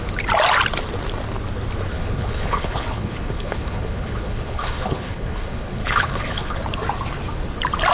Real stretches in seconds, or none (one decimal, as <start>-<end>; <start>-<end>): 0.0-1.9; 6.6-7.9